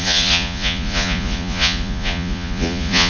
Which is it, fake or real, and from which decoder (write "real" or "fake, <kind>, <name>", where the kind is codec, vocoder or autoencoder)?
fake, vocoder, Vocos